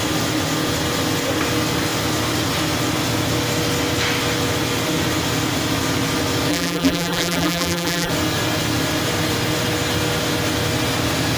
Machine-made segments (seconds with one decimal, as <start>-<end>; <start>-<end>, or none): 6.5-8.1